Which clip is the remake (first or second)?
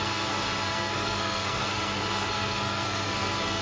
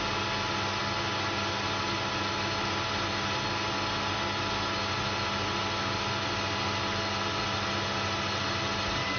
first